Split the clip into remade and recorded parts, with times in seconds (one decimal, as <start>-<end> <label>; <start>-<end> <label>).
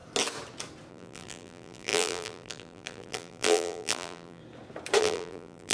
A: 0.0-0.9 recorded; 0.9-4.4 remade; 4.4-5.0 recorded; 5.0-5.7 remade